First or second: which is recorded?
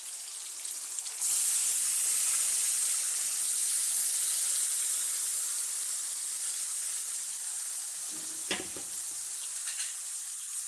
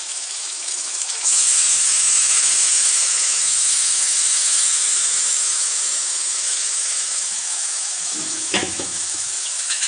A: first